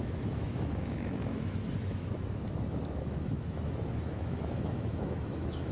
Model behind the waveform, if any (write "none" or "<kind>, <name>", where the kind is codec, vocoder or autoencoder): autoencoder, DAC-VAE